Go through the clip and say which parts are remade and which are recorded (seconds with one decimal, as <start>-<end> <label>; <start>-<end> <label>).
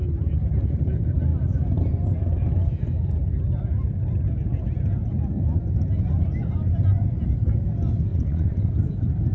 0.0-8.1 recorded; 8.1-8.7 remade; 8.7-9.3 recorded